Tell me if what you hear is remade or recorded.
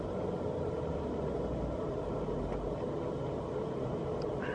remade